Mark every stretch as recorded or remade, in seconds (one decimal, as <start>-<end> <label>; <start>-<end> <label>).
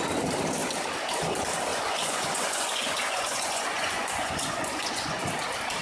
0.0-1.7 recorded; 1.7-5.2 remade; 5.2-5.8 recorded